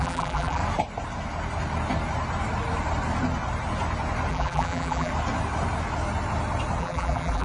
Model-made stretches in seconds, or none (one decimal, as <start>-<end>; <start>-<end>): 0.0-0.6; 4.3-5.1; 6.8-7.4